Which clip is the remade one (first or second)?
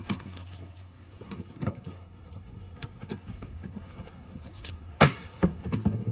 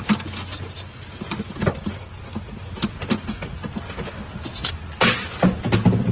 first